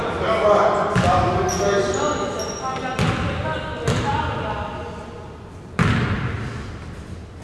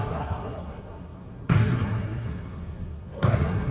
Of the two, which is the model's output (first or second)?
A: second